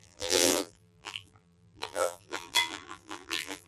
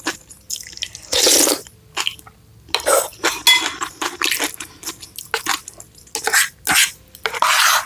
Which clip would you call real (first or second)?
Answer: second